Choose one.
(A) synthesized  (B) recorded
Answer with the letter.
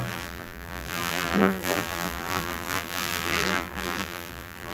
A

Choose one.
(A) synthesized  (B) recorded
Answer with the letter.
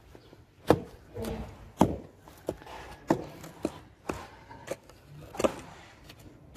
B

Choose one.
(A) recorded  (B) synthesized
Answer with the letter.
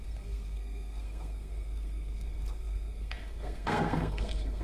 B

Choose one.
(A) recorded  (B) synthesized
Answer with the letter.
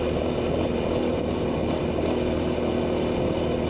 A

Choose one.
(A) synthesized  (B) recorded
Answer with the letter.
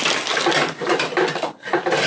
B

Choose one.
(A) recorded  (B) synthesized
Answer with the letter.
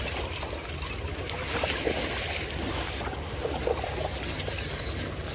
A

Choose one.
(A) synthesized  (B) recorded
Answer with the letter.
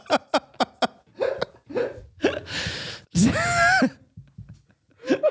B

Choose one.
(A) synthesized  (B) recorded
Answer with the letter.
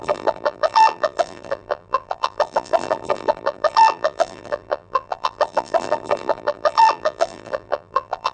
A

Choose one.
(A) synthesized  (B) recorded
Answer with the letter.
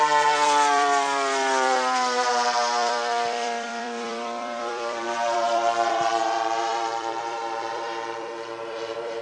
A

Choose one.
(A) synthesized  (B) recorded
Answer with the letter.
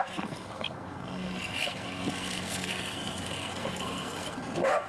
A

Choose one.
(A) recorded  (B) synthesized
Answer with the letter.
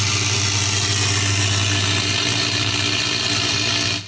A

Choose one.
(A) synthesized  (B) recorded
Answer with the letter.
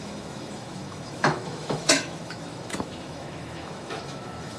A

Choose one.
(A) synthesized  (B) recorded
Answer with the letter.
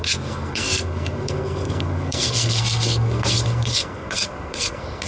A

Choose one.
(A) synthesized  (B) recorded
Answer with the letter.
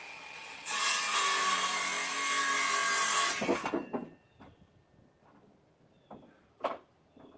B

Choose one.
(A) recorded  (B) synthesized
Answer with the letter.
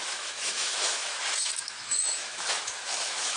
B